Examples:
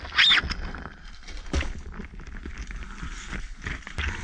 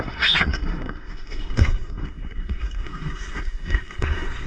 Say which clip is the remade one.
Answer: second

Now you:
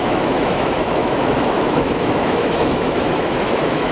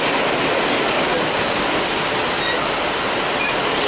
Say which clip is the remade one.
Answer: first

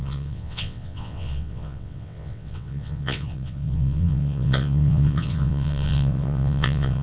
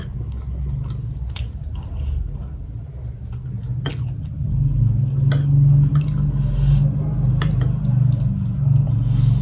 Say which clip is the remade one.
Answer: first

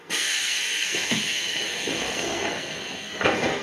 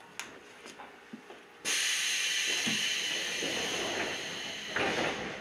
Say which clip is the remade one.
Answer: first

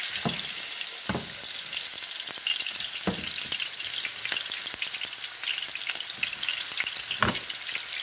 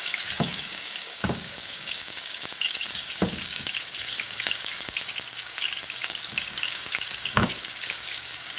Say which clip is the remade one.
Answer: second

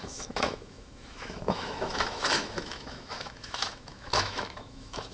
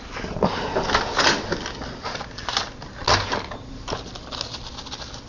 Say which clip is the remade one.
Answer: first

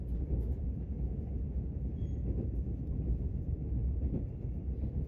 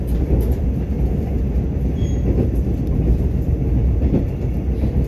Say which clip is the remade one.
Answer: first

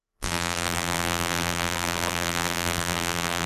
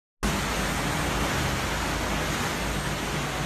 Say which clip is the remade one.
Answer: first